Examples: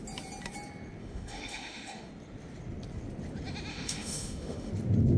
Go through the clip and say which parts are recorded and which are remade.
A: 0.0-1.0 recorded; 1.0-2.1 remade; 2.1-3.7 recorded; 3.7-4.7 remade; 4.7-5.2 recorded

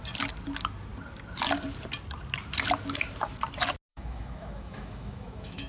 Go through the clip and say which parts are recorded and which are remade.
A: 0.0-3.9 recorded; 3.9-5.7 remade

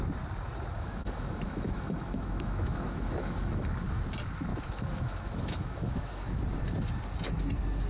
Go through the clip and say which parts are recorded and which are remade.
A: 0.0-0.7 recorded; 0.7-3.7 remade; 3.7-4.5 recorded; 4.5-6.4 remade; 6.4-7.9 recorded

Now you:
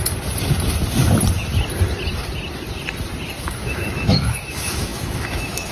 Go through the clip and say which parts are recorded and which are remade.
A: 0.0-3.4 recorded; 3.4-5.7 remade